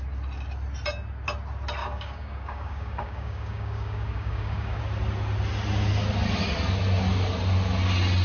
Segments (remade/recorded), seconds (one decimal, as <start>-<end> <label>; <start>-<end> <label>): 0.0-1.8 recorded; 1.8-4.8 remade; 4.8-8.2 recorded